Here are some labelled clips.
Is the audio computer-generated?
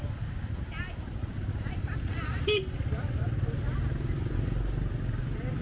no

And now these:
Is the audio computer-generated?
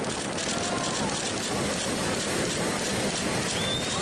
no